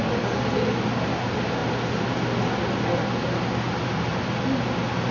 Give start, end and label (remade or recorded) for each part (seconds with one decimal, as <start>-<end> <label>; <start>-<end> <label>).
0.0-5.1 recorded